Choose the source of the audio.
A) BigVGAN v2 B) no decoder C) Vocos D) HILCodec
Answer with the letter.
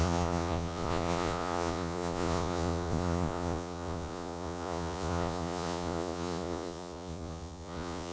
C